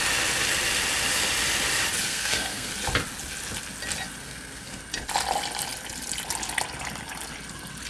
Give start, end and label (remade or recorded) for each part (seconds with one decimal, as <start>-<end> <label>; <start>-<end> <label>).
0.0-2.1 recorded; 2.1-2.7 remade; 2.7-4.2 recorded; 4.2-4.8 remade; 4.8-7.9 recorded